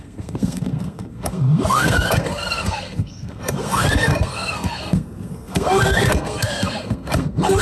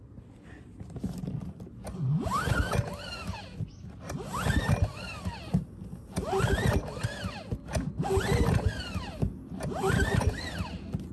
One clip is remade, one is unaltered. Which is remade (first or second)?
first